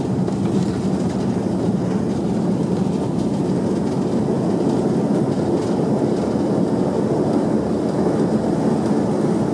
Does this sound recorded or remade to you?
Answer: recorded